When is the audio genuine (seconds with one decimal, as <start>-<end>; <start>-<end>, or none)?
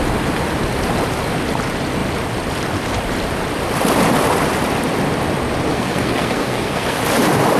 0.0-5.7; 7.0-7.6